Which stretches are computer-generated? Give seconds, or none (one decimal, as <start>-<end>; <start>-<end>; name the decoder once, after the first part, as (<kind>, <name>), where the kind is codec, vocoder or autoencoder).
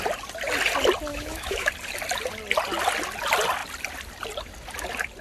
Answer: 1.1-1.7 (autoencoder, DAC-VAE)